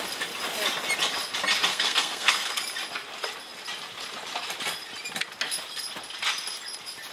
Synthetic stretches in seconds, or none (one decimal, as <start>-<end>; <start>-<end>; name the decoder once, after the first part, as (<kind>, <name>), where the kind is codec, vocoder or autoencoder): 1.7-2.6 (codec, SNAC)